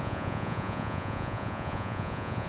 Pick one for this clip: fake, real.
fake